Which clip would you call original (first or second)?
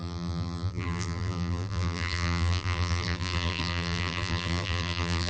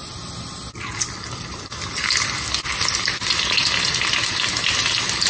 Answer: second